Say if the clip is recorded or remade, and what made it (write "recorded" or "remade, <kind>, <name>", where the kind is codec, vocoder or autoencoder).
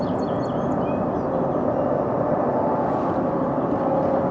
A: recorded